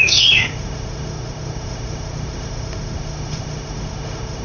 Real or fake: fake